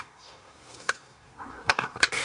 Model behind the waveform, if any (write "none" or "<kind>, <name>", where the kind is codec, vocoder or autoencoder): codec, SNAC